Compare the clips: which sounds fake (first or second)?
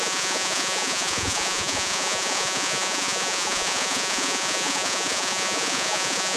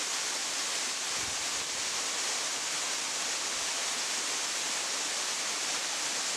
first